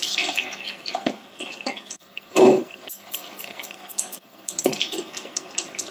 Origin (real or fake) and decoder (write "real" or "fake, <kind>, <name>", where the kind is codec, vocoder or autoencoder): fake, codec, SNAC